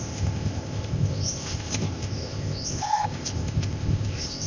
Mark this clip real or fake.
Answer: fake